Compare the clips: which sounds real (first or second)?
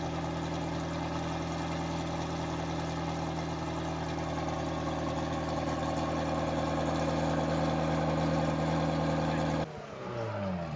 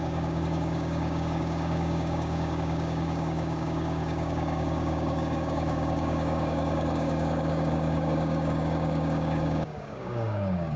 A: first